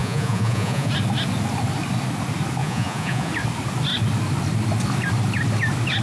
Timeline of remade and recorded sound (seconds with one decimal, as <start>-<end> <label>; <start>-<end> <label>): 0.0-0.9 remade; 0.9-2.6 recorded; 2.6-3.3 remade; 3.3-6.0 recorded